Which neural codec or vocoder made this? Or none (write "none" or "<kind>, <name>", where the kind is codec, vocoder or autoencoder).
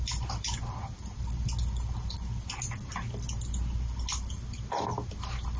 none